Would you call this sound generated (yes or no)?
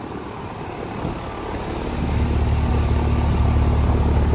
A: no